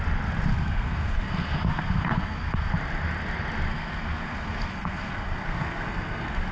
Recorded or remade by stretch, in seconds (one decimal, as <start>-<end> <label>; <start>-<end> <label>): 0.0-0.5 recorded; 0.5-2.7 remade; 2.7-3.7 recorded; 3.7-6.5 remade